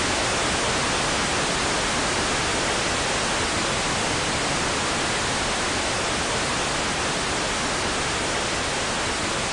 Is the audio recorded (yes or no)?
yes